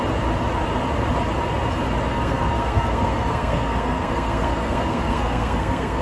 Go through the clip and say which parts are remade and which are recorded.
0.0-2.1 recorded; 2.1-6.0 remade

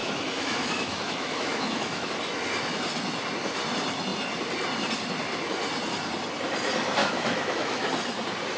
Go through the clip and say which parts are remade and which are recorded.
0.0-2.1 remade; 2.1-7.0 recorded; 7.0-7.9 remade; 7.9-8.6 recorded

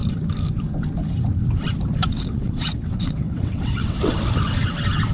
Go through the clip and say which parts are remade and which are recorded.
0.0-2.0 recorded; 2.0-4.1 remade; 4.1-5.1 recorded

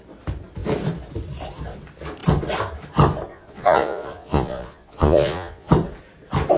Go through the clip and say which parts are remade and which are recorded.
0.0-3.3 recorded; 3.3-5.7 remade; 5.7-6.6 recorded

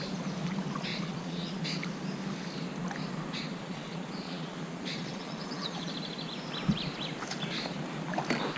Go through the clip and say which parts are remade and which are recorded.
0.0-0.9 recorded; 0.9-1.6 remade; 1.6-3.5 recorded; 3.5-5.9 remade; 5.9-8.6 recorded

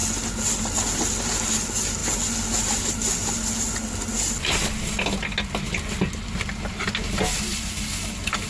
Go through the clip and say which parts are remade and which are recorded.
0.0-8.5 recorded

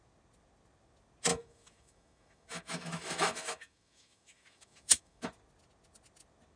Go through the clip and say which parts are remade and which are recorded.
0.0-1.3 recorded; 1.3-5.3 remade; 5.3-6.6 recorded

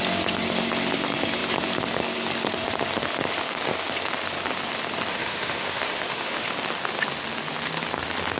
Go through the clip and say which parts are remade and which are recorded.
0.0-5.1 recorded; 5.1-6.5 remade; 6.5-8.4 recorded